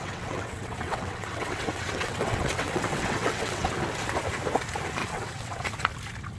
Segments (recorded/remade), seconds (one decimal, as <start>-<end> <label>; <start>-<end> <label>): 0.0-3.7 remade; 3.7-5.0 recorded; 5.0-5.7 remade; 5.7-6.4 recorded

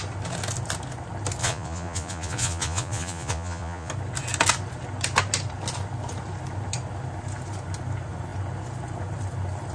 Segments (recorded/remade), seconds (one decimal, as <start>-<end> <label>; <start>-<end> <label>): 0.0-1.4 recorded; 1.4-3.9 remade; 3.9-9.7 recorded